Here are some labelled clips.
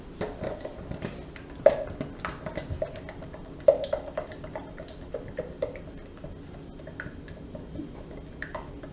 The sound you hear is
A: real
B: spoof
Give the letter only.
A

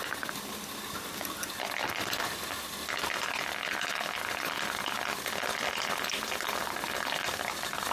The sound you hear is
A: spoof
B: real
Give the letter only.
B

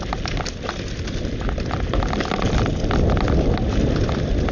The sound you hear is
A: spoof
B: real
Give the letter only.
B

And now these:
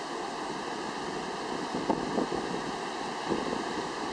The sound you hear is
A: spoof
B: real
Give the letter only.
B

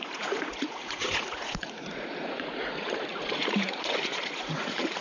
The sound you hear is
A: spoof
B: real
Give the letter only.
A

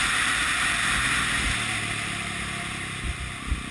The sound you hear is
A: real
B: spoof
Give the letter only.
A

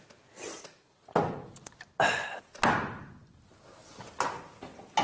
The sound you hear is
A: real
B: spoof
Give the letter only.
A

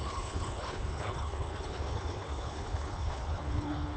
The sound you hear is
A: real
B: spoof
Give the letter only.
B